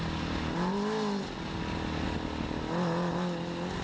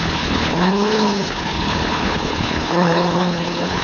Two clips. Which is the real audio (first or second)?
first